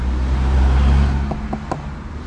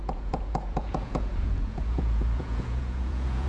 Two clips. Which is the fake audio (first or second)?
second